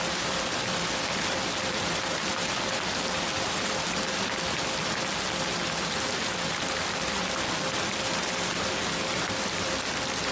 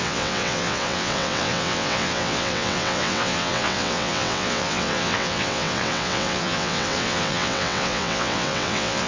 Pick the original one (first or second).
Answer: first